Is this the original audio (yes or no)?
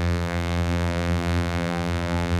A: no